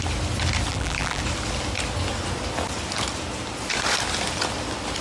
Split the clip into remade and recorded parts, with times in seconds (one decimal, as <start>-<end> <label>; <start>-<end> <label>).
0.0-0.7 recorded; 0.7-1.2 remade; 1.2-5.0 recorded